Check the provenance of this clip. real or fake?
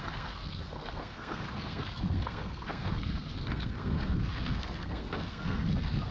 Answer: fake